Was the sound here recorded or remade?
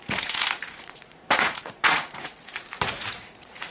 remade